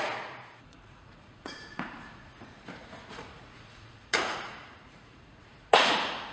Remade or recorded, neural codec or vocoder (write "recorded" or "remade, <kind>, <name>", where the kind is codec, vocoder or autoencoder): remade, vocoder, Vocos